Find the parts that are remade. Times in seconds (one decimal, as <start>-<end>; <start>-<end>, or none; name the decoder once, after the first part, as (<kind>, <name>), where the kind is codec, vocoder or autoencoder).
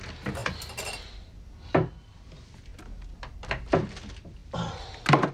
none